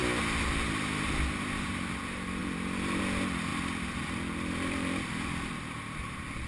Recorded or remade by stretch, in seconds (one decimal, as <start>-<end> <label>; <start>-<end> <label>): 0.0-0.5 remade; 0.5-2.4 recorded; 2.4-3.0 remade; 3.0-3.5 recorded; 3.5-6.0 remade; 6.0-6.5 recorded